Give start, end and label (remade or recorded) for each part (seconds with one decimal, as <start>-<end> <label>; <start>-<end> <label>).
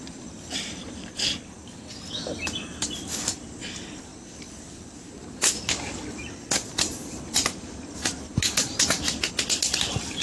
0.0-10.2 recorded